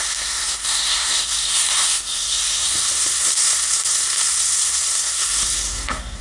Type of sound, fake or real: fake